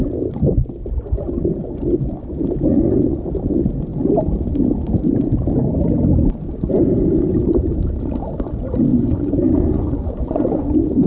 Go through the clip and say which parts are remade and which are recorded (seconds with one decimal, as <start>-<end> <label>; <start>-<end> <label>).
0.0-2.7 recorded; 2.7-3.2 remade; 3.2-8.9 recorded; 8.9-10.7 remade; 10.7-11.1 recorded